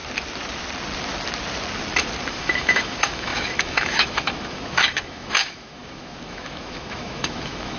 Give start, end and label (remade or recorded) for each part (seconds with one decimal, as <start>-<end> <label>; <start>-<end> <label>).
0.0-2.3 recorded; 2.3-7.8 remade